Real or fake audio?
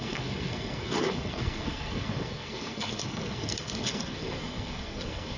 fake